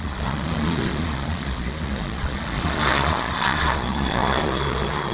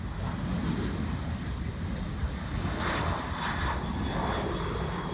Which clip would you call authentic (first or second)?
second